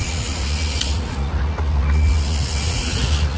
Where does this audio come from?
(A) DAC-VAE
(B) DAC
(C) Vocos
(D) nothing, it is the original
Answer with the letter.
C